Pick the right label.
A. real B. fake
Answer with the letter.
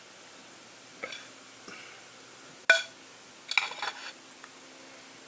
A